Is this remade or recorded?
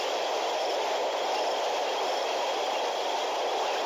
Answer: recorded